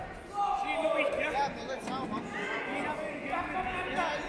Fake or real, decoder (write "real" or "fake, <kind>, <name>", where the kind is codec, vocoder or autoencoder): real